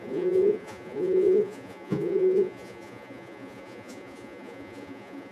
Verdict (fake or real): fake